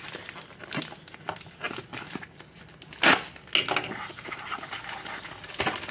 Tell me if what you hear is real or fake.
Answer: real